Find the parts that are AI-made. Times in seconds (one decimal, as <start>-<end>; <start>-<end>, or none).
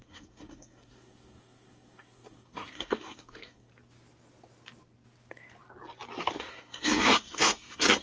0.0-3.7; 6.3-8.0